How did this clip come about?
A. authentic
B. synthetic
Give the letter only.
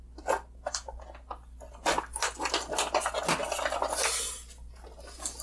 A